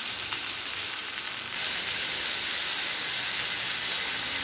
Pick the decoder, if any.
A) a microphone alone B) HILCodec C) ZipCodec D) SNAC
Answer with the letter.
A